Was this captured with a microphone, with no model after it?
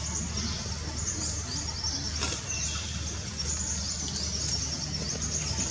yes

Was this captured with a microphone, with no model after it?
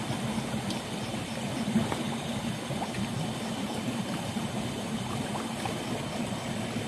yes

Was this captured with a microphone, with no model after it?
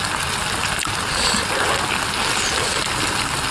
yes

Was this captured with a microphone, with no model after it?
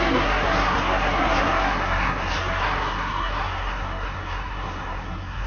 no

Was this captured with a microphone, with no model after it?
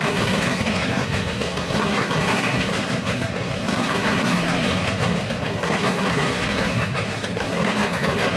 no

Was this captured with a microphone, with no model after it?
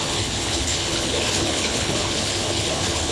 no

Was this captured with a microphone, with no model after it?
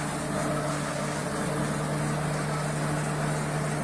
yes